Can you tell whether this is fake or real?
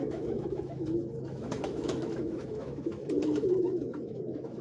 fake